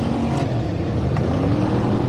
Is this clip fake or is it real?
real